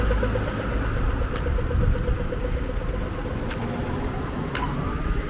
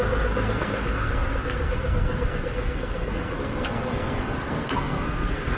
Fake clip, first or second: second